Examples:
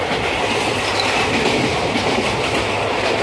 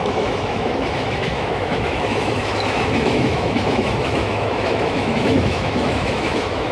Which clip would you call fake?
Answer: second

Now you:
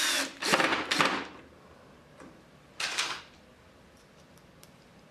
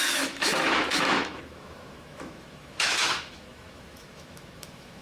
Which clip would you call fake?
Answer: second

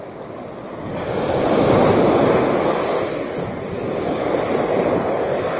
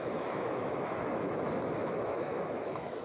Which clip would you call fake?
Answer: second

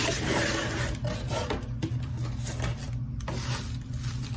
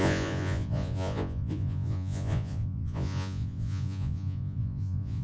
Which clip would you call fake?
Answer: second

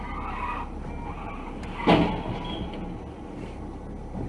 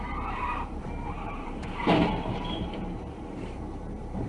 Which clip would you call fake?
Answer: second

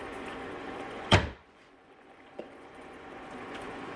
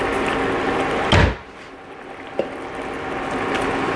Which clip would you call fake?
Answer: first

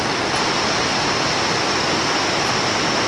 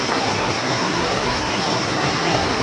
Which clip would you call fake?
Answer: second